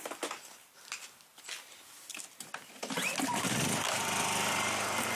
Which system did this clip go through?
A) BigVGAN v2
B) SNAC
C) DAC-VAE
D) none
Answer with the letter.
D